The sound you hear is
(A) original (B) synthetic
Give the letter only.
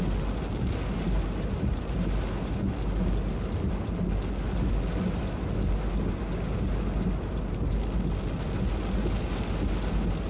A